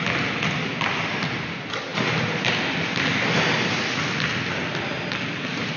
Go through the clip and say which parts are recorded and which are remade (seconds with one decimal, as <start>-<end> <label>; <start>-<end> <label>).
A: 0.0-5.8 recorded